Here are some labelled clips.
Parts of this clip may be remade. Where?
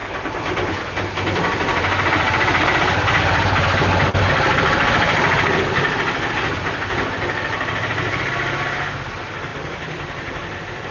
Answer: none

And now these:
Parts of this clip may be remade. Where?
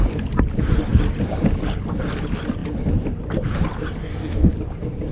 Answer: 4.0-4.5 (codec, DAC)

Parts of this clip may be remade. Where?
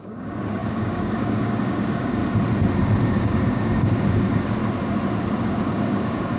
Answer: 0.0-2.2 (codec, DAC); 3.0-4.6; 5.4-6.4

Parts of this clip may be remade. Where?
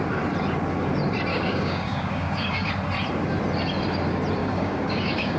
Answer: 1.3-2.7 (codec, DAC); 4.4-5.4